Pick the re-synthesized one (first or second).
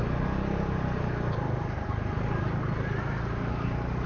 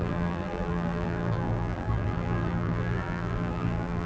second